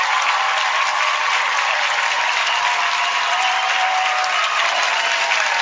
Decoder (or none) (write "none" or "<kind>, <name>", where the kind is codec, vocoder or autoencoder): none